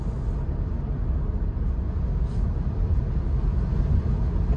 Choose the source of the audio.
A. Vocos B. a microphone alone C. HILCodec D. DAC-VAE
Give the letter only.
B